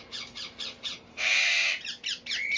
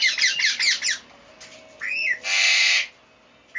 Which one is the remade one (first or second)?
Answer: first